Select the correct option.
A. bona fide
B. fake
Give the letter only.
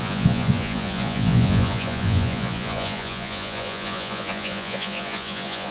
B